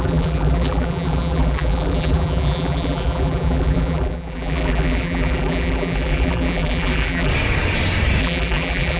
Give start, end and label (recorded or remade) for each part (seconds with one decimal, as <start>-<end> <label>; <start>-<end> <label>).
0.0-7.3 remade; 7.3-8.2 recorded; 8.2-9.0 remade